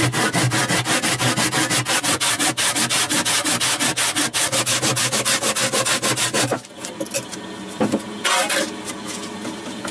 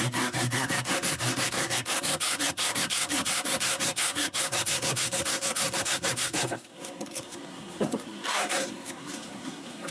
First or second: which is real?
first